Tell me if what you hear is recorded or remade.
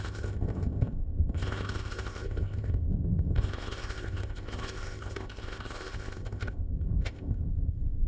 remade